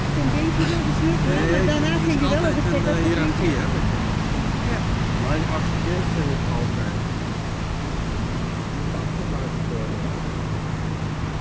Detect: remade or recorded recorded